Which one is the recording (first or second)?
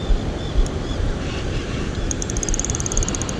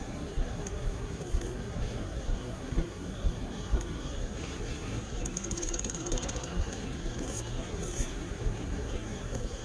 first